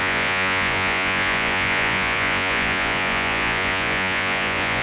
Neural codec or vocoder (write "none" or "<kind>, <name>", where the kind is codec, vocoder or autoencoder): vocoder, Vocos